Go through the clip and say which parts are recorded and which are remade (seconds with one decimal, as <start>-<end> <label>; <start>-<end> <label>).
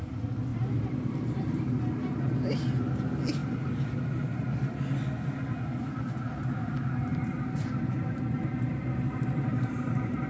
0.0-0.5 recorded; 0.5-1.6 remade; 1.6-8.7 recorded; 8.7-10.3 remade